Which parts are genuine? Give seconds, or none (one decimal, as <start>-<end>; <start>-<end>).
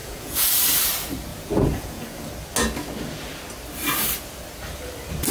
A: 0.5-1.3; 2.2-5.3